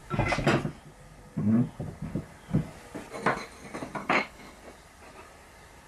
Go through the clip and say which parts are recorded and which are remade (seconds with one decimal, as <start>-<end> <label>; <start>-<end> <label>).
0.0-4.0 recorded; 4.0-4.6 remade; 4.6-5.9 recorded